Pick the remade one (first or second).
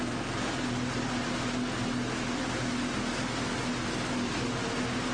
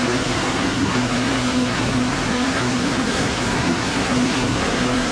second